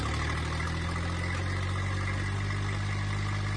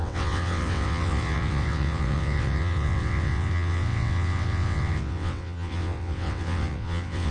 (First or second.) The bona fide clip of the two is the first